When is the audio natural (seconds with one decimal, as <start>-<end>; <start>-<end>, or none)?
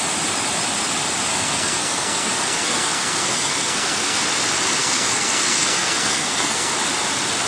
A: 0.0-1.3; 4.2-4.8; 6.7-7.5